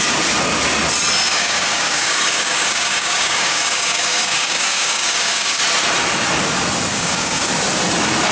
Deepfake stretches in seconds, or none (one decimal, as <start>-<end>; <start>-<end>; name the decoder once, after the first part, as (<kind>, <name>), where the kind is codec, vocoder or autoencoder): 1.3-5.6 (codec, DAC); 6.9-7.5

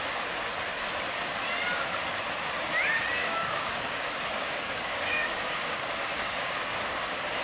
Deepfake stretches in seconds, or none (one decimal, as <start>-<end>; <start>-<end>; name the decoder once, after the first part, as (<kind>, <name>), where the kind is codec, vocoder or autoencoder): 3.2-7.4 (codec, DAC)

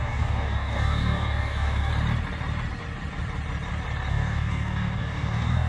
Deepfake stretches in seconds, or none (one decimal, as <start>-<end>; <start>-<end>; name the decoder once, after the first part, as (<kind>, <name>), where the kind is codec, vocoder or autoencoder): 0.0-1.9 (codec, DAC); 4.1-5.7

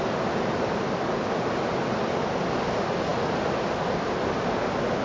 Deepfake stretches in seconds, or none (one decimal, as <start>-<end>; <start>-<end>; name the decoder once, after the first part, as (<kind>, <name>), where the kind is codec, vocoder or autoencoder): none

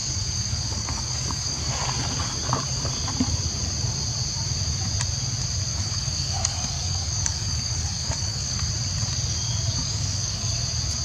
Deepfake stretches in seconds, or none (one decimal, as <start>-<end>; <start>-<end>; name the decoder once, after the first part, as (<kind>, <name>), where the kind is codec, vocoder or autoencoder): 0.0-1.7 (codec, DAC); 5.7-8.7; 9.7-10.5

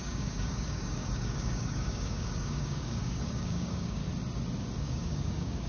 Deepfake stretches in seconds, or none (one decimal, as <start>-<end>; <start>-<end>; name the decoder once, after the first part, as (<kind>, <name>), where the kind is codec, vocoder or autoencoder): 0.0-4.0 (codec, DAC); 4.8-5.7

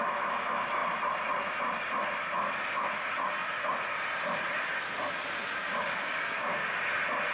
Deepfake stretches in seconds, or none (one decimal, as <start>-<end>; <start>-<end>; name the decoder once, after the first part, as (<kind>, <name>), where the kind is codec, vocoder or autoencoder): 5.6-6.8 (codec, DAC)

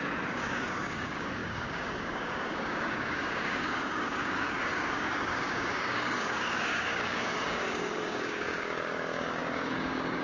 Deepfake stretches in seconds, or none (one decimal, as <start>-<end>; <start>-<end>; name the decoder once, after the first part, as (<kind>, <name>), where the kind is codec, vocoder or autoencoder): 0.0-10.2 (codec, DAC)